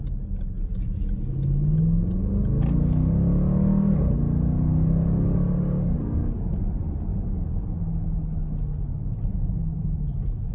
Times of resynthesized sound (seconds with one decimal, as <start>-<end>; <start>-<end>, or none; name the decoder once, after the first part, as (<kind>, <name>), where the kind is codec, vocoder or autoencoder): none